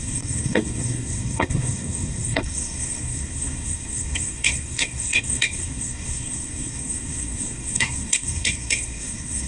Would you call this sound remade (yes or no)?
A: yes